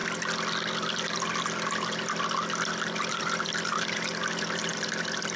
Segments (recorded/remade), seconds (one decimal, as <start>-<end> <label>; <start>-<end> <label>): 0.0-3.2 recorded; 3.2-5.4 remade